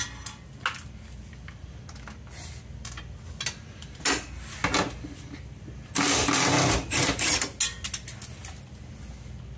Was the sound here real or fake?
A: real